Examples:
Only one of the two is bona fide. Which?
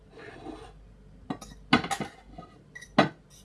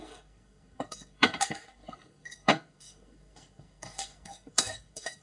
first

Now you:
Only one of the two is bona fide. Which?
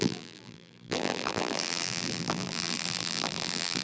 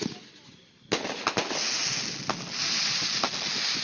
second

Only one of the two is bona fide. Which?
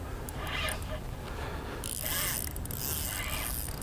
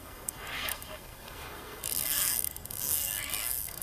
first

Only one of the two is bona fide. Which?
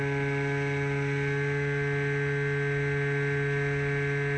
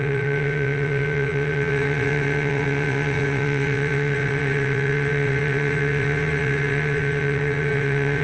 first